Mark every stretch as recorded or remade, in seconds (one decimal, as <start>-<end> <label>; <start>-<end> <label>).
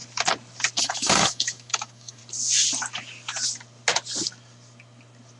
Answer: 0.0-0.8 recorded; 0.8-2.2 remade; 2.2-5.4 recorded